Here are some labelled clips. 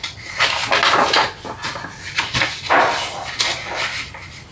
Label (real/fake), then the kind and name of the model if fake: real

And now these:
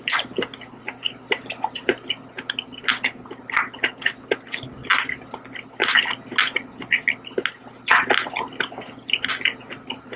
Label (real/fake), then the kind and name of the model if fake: real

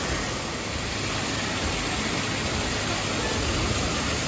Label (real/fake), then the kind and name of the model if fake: real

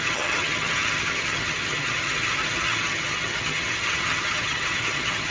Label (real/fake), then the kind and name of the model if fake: fake, vocoder, HiFi-GAN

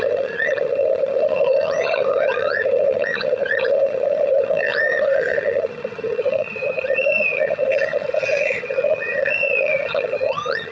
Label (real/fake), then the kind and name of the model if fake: fake, vocoder, HiFi-GAN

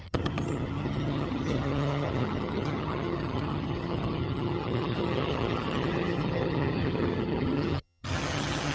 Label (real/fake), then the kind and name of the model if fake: fake, vocoder, HiFi-GAN